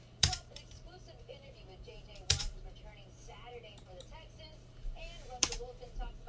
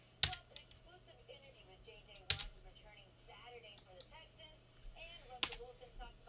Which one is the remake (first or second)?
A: first